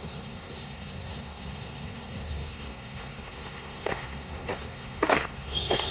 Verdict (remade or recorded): remade